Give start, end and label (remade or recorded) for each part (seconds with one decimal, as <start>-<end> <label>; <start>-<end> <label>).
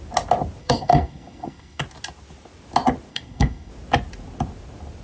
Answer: 0.0-0.6 recorded; 0.6-1.8 remade; 1.8-3.1 recorded; 3.1-3.7 remade; 3.7-5.0 recorded